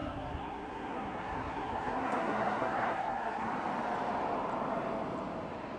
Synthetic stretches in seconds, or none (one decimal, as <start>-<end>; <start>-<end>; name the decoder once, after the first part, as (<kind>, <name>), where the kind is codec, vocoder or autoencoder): 0.0-3.5 (codec, SNAC)

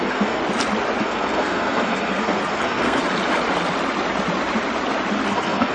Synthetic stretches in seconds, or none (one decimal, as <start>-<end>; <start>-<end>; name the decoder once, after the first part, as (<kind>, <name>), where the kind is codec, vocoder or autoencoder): 0.0-0.4 (codec, SNAC); 1.0-3.0; 5.3-5.7

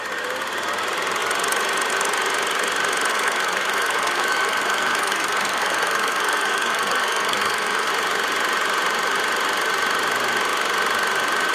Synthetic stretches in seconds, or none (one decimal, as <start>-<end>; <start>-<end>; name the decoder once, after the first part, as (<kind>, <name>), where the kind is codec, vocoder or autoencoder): 3.1-7.9 (codec, SNAC)

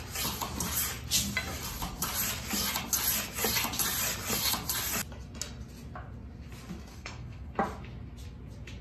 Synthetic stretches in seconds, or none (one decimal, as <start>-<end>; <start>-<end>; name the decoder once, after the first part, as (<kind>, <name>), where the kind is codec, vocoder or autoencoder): 6.9-7.5 (codec, SNAC)

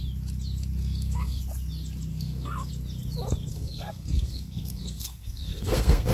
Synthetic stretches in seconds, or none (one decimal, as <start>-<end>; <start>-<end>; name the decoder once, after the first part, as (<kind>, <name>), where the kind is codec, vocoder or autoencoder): 0.8-1.4 (codec, SNAC); 2.1-2.7; 3.5-6.1

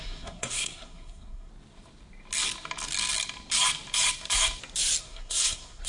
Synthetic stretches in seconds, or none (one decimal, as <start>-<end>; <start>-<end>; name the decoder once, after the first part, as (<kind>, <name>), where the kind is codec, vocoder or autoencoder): 0.0-1.5 (codec, SNAC); 5.0-5.9

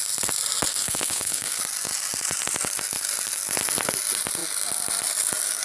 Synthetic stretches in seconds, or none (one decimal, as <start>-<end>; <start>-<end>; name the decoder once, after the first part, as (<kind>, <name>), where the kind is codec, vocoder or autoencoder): 0.7-1.6 (codec, SNAC)